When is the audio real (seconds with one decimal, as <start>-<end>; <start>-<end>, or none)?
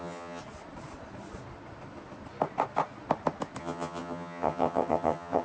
0.4-3.6